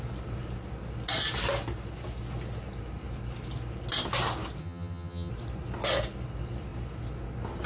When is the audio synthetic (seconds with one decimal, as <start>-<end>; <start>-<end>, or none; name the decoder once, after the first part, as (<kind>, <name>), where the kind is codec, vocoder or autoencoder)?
4.6-5.3 (vocoder, HiFi-GAN)

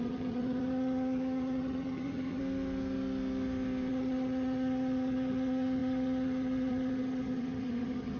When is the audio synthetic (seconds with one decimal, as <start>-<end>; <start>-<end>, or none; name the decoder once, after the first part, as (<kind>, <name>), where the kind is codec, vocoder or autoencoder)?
0.0-2.4 (vocoder, HiFi-GAN); 3.9-8.2